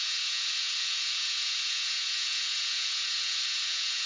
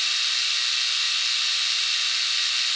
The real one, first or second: second